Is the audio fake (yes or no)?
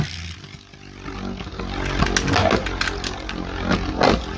no